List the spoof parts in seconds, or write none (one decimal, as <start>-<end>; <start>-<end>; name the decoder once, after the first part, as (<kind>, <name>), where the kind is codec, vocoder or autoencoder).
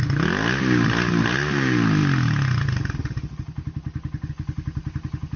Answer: none